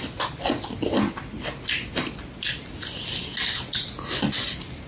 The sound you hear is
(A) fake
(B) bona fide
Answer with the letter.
B